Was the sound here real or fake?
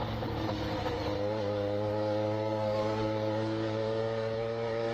fake